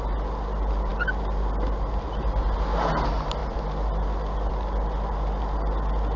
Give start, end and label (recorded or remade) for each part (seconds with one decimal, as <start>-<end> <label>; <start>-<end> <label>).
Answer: 0.0-6.2 recorded